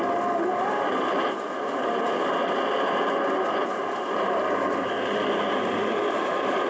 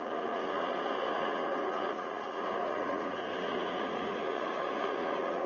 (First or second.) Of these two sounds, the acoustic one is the first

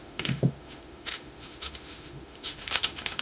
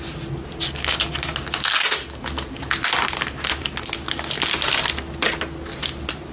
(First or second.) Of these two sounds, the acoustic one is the second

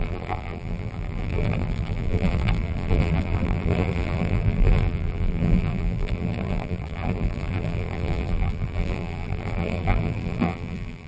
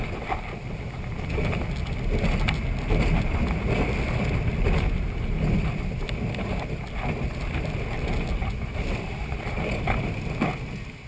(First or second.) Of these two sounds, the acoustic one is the second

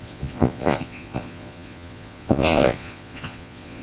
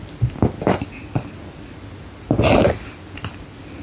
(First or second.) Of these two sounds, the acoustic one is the second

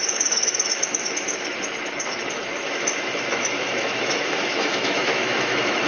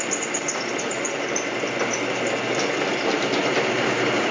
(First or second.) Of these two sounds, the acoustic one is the second